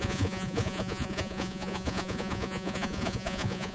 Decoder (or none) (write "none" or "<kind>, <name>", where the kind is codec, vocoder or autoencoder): vocoder, Vocos